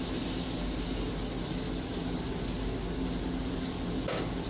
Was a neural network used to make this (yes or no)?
no